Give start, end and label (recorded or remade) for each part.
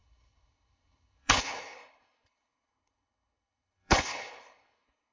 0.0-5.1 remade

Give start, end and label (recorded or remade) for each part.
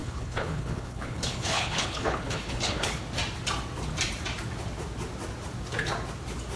0.0-3.0 remade; 3.0-6.6 recorded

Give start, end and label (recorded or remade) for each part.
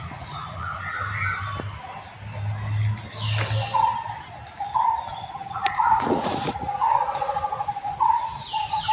0.0-0.7 remade; 0.7-5.5 recorded; 5.5-8.9 remade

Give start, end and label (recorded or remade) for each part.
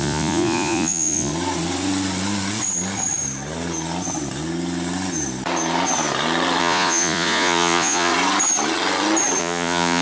0.0-1.3 remade; 1.3-6.6 recorded; 6.6-8.1 remade; 8.1-9.4 recorded; 9.4-10.0 remade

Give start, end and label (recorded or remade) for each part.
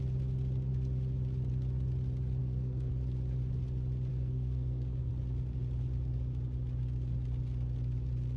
0.0-2.4 recorded; 2.4-2.9 remade; 2.9-4.1 recorded; 4.1-5.1 remade; 5.1-8.4 recorded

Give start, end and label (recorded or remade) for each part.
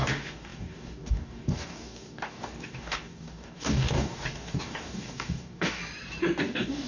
0.0-5.8 remade; 5.8-6.4 recorded; 6.4-6.9 remade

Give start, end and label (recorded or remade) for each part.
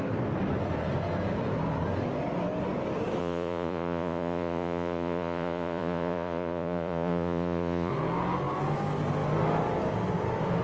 0.0-3.2 recorded; 3.2-7.9 remade; 7.9-10.6 recorded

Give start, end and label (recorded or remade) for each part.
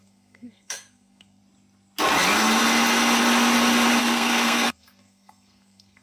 0.0-1.4 remade; 1.4-4.0 recorded; 4.0-6.0 remade